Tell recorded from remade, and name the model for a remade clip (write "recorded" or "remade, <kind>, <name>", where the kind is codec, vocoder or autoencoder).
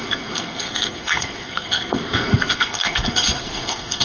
remade, codec, SNAC